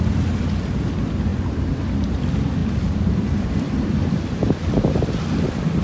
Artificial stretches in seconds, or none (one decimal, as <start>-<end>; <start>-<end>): 1.3-1.8; 2.6-3.5